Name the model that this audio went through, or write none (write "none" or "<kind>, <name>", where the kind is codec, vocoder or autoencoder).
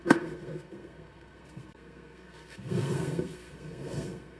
codec, SNAC